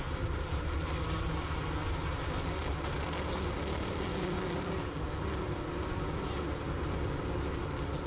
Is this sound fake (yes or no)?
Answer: no